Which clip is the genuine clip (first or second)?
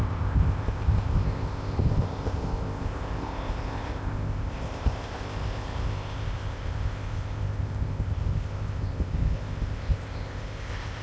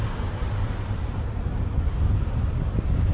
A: second